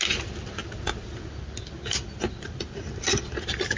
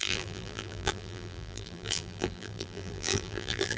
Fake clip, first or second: second